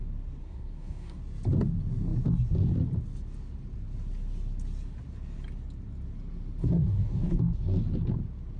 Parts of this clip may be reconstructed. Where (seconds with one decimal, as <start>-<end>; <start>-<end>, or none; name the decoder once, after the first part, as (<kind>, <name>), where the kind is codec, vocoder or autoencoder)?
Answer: 0.4-1.2 (codec, SNAC); 6.6-7.4

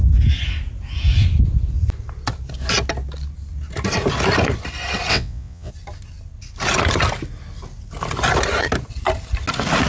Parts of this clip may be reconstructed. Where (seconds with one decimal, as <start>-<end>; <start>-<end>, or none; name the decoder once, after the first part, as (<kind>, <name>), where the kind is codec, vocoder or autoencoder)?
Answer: 5.1-5.7 (vocoder, WaveNeXt)

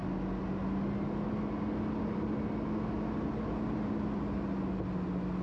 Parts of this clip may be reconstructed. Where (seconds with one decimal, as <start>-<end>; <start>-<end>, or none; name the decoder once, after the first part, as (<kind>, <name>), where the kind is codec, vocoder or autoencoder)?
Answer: none